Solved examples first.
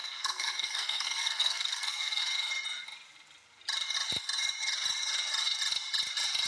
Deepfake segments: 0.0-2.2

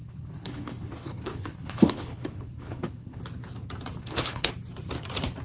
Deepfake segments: 0.0-3.2; 4.0-4.5

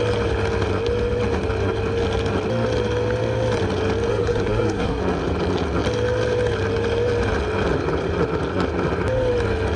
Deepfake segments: 4.1-5.0

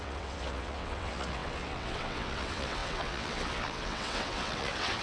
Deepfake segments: 0.0-5.0

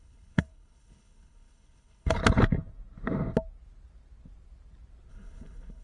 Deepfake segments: 0.0-2.2; 5.1-5.8

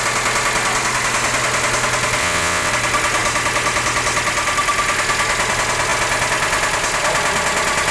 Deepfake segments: 2.2-2.7